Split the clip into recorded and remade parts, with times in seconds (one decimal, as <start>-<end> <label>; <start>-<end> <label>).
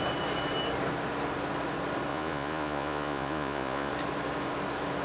0.0-2.1 recorded; 2.1-3.9 remade; 3.9-5.0 recorded